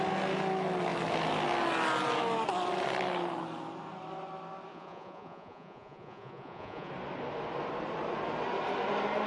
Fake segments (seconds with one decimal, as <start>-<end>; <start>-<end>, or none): 4.7-6.9